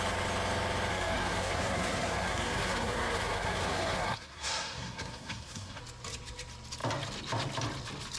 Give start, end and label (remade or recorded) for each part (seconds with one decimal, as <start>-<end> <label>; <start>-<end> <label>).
0.0-0.9 recorded; 0.9-5.8 remade; 5.8-8.2 recorded